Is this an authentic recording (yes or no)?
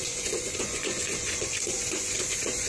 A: no